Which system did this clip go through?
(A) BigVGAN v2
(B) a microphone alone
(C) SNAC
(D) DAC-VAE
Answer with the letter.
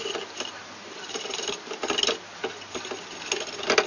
B